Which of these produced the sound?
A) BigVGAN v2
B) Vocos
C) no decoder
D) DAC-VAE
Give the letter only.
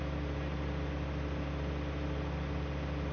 C